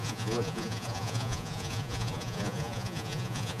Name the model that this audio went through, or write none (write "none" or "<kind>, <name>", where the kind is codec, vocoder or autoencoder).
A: vocoder, Vocos